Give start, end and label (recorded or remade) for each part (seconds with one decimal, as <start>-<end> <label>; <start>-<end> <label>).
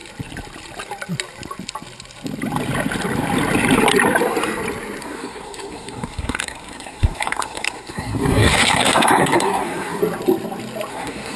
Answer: 0.0-5.0 recorded; 5.0-10.0 remade; 10.0-10.9 recorded; 10.9-11.4 remade